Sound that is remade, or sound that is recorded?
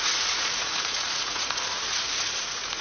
remade